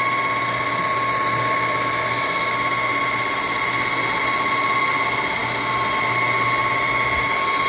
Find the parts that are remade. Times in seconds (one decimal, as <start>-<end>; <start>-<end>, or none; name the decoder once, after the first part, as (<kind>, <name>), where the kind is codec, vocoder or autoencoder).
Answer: none